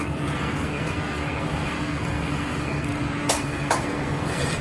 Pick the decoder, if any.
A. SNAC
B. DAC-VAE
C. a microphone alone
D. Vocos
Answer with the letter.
A